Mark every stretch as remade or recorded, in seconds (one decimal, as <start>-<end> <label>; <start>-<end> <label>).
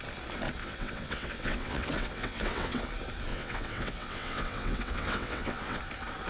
0.0-0.6 recorded; 0.6-2.8 remade; 2.8-3.3 recorded; 3.3-5.8 remade; 5.8-6.3 recorded